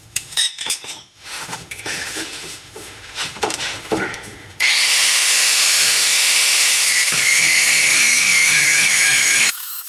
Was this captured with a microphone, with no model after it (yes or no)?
no